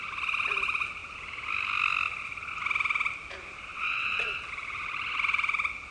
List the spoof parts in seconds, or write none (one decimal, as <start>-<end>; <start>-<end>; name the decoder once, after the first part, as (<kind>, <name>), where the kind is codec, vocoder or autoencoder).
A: 3.7-4.5 (vocoder, WaveNeXt)

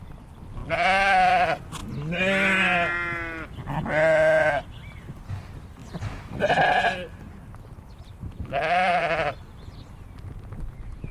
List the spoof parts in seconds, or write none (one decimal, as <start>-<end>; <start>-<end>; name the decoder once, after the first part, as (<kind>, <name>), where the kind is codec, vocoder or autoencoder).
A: 5.8-6.5 (vocoder, BigVGAN v2); 8.1-9.3

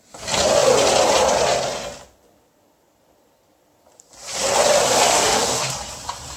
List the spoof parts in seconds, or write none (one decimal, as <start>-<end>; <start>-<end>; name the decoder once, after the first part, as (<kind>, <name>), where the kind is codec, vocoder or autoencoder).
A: 5.1-5.7 (autoencoder, DAC-VAE)

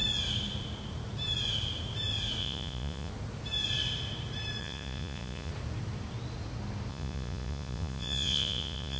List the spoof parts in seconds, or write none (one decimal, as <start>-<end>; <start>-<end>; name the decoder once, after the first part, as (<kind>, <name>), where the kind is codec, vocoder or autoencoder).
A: 2.4-3.1 (vocoder, Vocos); 4.6-5.5; 6.9-9.0

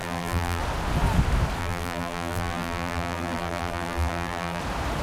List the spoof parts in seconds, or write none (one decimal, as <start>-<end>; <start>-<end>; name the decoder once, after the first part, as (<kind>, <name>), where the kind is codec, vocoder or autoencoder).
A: 0.0-0.6 (vocoder, BigVGAN v2); 1.6-4.6

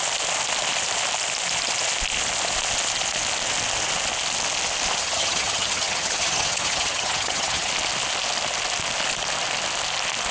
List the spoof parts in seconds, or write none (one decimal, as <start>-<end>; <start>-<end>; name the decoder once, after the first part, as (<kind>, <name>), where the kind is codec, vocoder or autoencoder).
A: 5.0-7.7 (vocoder, HiFi-GAN)

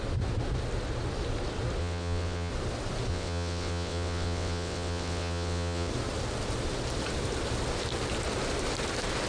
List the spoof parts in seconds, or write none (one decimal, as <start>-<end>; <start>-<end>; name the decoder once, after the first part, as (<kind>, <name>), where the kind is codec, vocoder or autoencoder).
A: 1.8-2.5 (vocoder, WaveNeXt); 3.1-5.9